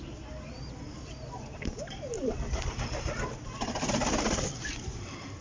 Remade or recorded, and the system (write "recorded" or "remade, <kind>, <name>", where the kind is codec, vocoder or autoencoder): recorded